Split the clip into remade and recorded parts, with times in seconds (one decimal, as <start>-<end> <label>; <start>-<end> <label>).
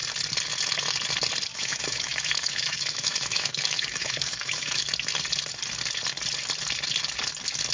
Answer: 0.0-1.5 recorded; 1.5-4.8 remade; 4.8-7.7 recorded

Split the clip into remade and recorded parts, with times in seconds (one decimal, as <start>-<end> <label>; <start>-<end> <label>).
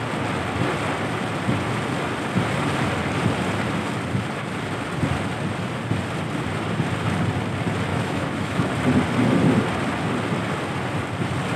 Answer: 0.0-7.9 recorded; 7.9-8.7 remade; 8.7-11.6 recorded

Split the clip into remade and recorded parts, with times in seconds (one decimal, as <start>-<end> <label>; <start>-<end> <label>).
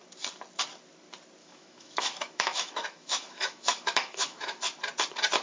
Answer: 0.0-1.4 recorded; 1.4-4.6 remade; 4.6-5.4 recorded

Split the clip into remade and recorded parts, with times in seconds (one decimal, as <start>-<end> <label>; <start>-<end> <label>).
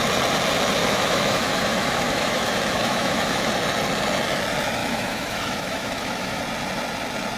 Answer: 0.0-0.8 recorded; 0.8-3.5 remade; 3.5-4.8 recorded; 4.8-6.4 remade; 6.4-7.4 recorded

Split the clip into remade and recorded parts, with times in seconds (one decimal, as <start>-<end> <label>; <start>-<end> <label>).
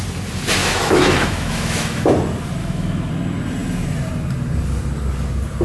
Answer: 0.0-0.6 recorded; 0.6-2.1 remade; 2.1-2.6 recorded; 2.6-3.1 remade; 3.1-5.6 recorded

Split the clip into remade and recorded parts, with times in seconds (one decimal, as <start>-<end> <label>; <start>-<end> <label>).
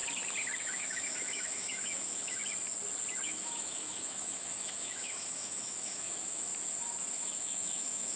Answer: 0.0-0.6 recorded; 0.6-2.4 remade; 2.4-3.2 recorded; 3.2-6.5 remade; 6.5-7.1 recorded; 7.1-8.2 remade